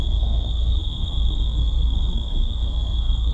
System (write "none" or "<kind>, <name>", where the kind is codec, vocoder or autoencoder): codec, SNAC